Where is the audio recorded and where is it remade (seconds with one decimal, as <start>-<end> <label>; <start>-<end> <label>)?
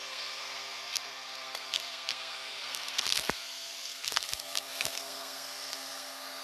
0.0-6.4 remade